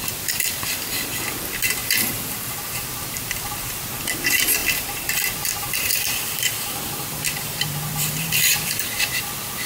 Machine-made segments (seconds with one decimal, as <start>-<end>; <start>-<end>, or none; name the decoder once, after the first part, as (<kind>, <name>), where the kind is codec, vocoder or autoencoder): 0.0-9.7 (vocoder, BigVGAN v2)

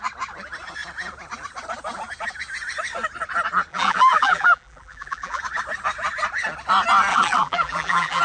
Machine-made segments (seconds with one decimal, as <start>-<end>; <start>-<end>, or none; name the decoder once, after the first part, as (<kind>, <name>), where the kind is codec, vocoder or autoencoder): 3.7-5.4 (vocoder, BigVGAN v2); 7.1-8.2

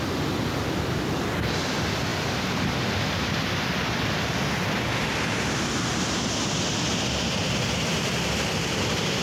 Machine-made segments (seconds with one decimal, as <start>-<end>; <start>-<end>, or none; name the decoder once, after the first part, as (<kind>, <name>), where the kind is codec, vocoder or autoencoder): none

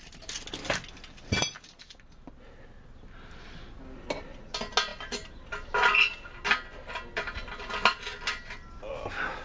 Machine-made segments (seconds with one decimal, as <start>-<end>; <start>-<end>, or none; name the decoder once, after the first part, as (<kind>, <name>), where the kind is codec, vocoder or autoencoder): 4.9-5.5 (vocoder, BigVGAN v2)